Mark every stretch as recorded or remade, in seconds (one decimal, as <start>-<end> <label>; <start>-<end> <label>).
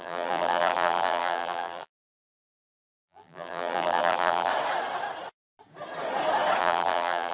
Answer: 0.0-4.5 remade; 4.5-6.6 recorded; 6.6-7.3 remade